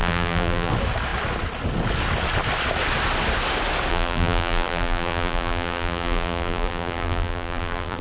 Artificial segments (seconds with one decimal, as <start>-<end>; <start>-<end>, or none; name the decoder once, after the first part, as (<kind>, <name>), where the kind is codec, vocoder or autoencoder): 0.0-0.7 (vocoder, BigVGAN v2); 3.9-8.0